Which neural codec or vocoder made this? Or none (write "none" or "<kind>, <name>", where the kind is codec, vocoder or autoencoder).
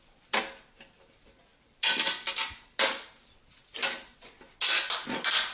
none